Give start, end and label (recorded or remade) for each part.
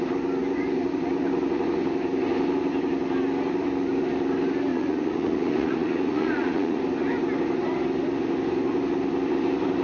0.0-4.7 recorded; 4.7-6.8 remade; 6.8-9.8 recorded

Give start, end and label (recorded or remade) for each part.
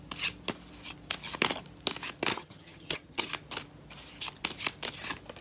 0.0-2.3 recorded; 2.3-3.3 remade; 3.3-5.4 recorded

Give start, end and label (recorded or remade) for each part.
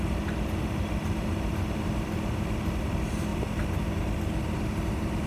0.0-5.3 recorded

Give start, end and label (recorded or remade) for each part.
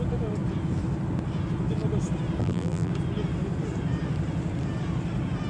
0.0-2.4 recorded; 2.4-2.9 remade; 2.9-5.5 recorded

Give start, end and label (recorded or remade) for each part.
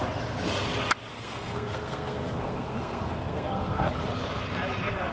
0.0-1.1 recorded; 1.1-3.9 remade; 3.9-5.1 recorded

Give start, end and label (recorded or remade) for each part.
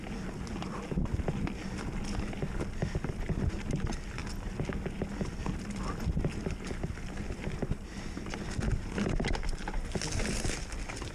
0.0-11.1 recorded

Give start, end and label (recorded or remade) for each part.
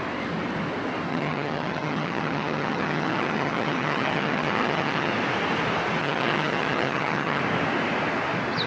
0.0-1.1 recorded; 1.1-5.1 remade; 5.1-6.0 recorded; 6.0-7.4 remade; 7.4-8.7 recorded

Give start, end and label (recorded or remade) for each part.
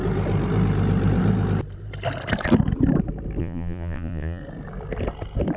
0.0-3.4 recorded; 3.4-4.4 remade; 4.4-5.6 recorded